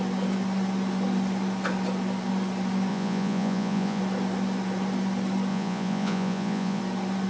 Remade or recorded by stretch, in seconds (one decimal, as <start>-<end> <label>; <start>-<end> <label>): 0.0-2.9 recorded; 2.9-4.0 remade; 4.0-5.5 recorded; 5.5-6.8 remade; 6.8-7.3 recorded